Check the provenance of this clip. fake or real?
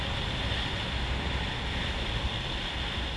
real